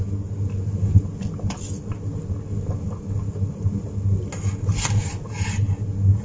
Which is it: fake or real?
real